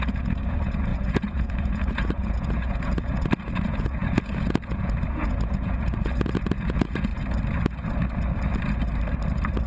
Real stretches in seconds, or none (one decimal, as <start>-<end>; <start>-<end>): 7.1-9.7